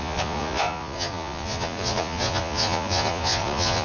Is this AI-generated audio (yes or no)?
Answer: yes